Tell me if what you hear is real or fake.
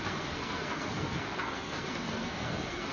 fake